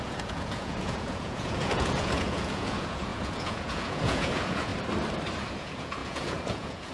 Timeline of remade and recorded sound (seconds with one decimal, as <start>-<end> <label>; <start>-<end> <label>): 0.0-4.7 remade; 4.7-5.5 recorded; 5.5-6.9 remade